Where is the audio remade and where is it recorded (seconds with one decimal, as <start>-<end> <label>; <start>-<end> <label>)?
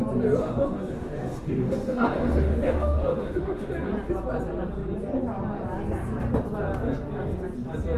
0.0-0.4 recorded; 0.4-3.7 remade; 3.7-8.0 recorded